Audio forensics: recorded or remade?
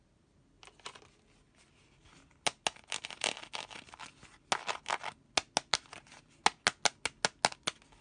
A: recorded